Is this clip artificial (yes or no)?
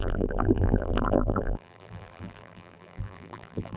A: yes